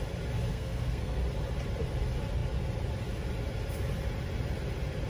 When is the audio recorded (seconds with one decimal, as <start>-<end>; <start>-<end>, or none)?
0.0-0.5; 1.2-5.1